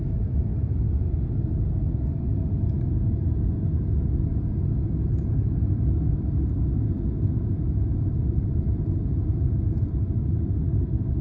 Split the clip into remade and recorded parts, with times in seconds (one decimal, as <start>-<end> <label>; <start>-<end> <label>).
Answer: 0.0-11.2 recorded

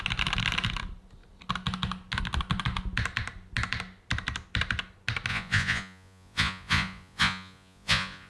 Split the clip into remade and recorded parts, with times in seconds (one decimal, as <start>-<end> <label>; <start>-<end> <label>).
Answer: 0.0-5.3 recorded; 5.3-8.3 remade